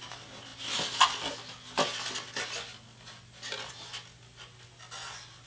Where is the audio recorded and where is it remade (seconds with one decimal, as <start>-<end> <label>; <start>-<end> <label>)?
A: 0.0-5.5 recorded